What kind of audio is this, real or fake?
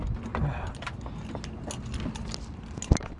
real